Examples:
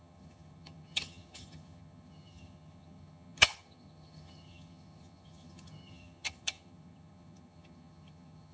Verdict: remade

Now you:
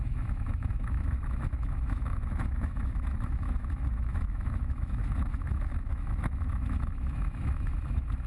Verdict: remade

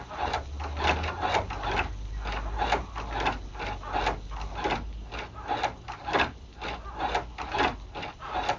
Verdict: recorded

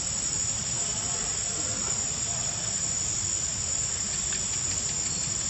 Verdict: recorded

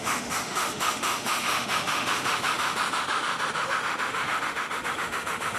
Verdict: remade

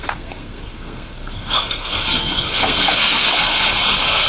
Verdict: remade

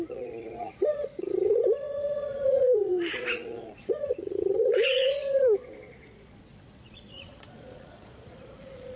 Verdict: remade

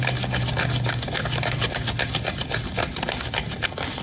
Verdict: recorded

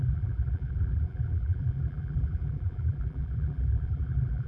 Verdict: remade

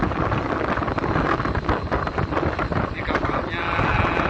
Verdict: recorded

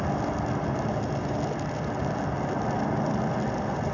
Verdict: recorded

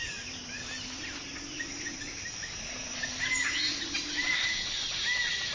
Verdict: remade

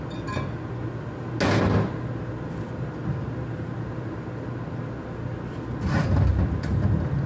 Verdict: recorded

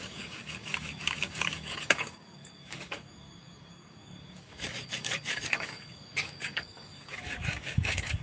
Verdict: remade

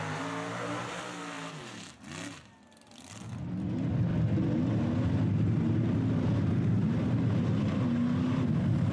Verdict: recorded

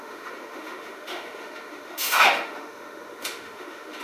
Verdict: remade